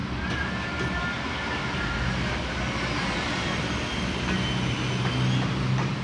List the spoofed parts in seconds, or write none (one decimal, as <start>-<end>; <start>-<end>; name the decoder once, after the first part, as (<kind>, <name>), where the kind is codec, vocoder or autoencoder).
none